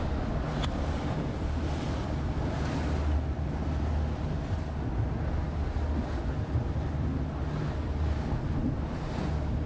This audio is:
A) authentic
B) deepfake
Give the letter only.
A